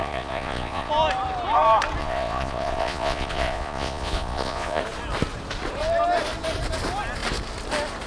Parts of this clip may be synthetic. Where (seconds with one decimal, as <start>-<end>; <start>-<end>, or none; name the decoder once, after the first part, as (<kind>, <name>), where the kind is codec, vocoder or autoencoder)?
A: 0.0-0.9 (vocoder, Vocos); 2.0-4.8

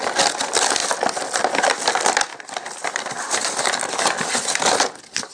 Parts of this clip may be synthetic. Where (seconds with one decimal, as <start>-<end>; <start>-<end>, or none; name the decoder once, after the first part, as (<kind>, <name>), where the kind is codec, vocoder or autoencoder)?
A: 0.8-1.7 (vocoder, BigVGAN v2); 2.3-3.6

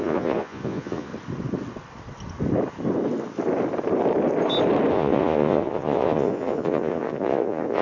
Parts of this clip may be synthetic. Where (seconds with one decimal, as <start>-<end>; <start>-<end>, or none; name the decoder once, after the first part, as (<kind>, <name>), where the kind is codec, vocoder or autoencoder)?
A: 0.0-1.1 (vocoder, Vocos); 4.9-7.8

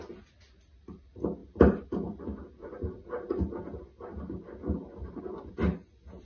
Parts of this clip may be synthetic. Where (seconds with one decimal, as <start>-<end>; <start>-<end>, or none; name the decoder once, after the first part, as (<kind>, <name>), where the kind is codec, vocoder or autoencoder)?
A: none